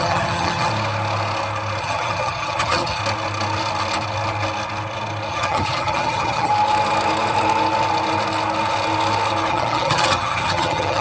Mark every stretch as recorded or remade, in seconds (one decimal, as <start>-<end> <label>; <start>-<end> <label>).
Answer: 0.0-0.7 remade; 0.7-1.8 recorded; 1.8-3.0 remade; 3.0-5.3 recorded; 5.3-6.5 remade; 6.5-9.5 recorded; 9.5-11.0 remade